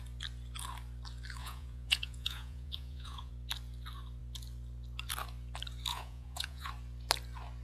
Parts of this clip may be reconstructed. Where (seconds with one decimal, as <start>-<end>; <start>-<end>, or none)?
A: 1.4-3.3; 5.9-6.7